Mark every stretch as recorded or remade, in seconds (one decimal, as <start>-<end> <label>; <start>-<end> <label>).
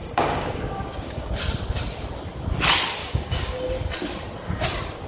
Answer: 0.0-1.3 remade; 1.3-3.0 recorded; 3.0-3.6 remade; 3.6-5.1 recorded